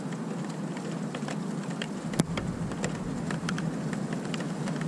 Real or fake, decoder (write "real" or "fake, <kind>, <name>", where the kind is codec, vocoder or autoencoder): real